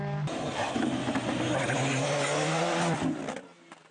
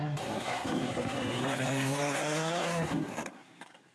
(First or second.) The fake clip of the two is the second